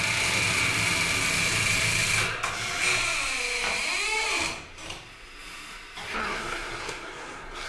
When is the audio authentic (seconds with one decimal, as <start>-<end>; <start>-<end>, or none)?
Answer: 0.0-6.2